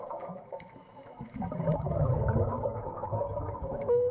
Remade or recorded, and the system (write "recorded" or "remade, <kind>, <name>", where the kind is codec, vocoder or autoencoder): remade, autoencoder, DAC-VAE